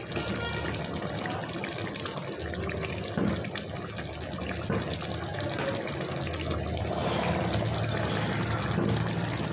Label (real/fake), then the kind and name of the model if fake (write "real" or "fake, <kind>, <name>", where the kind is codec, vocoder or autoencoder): real